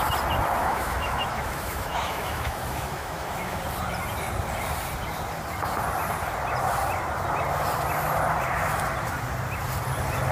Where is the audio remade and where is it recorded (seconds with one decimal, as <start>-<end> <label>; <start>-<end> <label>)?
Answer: 0.0-0.6 recorded; 0.6-3.6 remade; 3.6-10.3 recorded